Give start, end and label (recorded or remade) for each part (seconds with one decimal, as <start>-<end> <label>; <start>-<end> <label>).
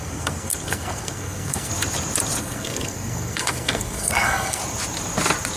0.0-1.7 remade; 1.7-2.4 recorded; 2.4-4.6 remade; 4.6-5.6 recorded